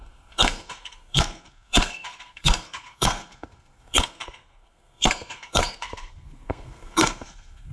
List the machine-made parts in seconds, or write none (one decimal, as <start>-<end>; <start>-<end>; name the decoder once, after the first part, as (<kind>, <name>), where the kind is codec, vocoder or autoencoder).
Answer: 0.0-7.7 (codec, SNAC)